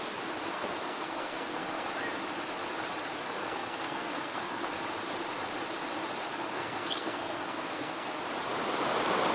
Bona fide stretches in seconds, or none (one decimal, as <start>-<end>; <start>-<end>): 0.0-0.5; 1.9-3.4; 4.8-6.3; 8.2-9.3

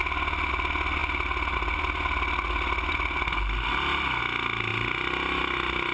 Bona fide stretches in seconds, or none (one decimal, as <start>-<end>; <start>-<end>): 0.0-5.9